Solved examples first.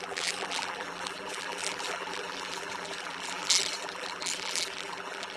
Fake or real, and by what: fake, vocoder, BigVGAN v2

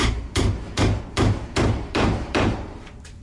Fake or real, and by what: fake, vocoder, BigVGAN v2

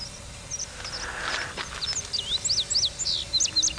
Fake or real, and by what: real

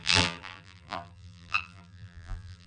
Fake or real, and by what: fake, vocoder, BigVGAN v2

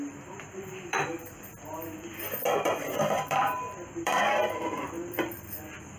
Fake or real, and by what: fake, vocoder, BigVGAN v2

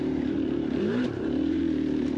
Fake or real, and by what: fake, vocoder, BigVGAN v2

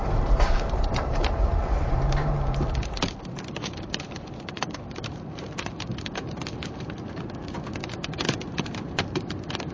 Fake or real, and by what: fake, vocoder, BigVGAN v2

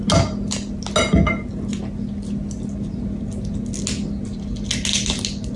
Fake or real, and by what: real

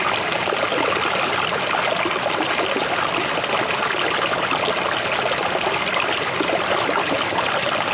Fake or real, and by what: real